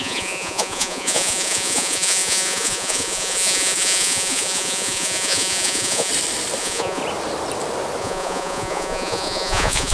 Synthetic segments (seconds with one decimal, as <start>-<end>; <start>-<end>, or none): 0.0-6.1; 6.6-7.0; 8.0-9.9